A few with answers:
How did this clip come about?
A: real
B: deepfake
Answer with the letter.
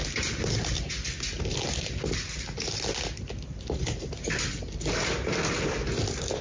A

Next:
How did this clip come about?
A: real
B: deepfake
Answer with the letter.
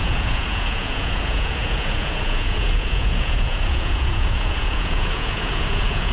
B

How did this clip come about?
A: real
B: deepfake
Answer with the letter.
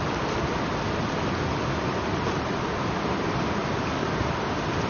A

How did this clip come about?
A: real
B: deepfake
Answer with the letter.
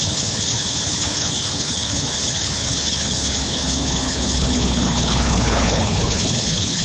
B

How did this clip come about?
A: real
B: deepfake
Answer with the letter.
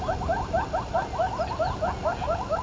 A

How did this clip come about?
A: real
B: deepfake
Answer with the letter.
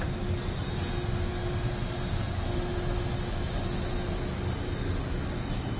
A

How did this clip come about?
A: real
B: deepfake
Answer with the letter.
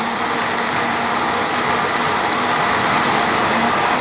A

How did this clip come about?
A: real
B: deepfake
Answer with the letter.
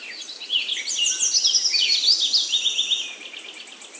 A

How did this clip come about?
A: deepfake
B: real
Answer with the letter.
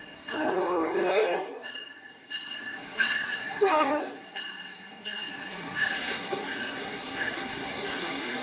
A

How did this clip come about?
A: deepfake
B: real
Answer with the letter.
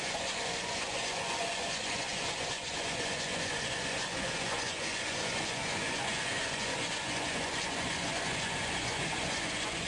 A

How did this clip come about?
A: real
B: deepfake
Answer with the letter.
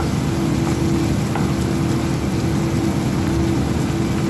A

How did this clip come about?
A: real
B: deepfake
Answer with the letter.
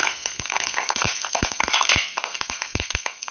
B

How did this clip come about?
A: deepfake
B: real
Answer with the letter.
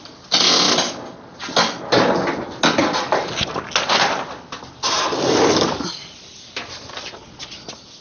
B